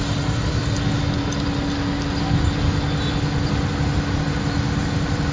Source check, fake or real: real